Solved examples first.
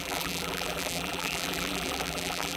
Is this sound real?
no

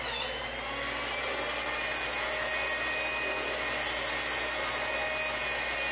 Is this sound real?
yes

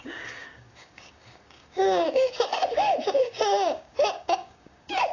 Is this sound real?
no